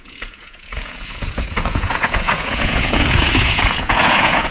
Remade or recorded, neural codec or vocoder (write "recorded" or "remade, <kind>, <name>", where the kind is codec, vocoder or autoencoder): remade, vocoder, Vocos